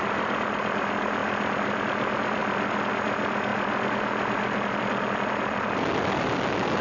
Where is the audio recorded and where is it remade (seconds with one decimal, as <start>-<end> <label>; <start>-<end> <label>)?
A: 0.0-6.8 recorded